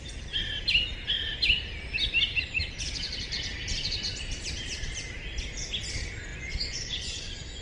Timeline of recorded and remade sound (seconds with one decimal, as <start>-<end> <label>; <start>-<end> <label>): 0.0-6.3 recorded; 6.3-7.6 remade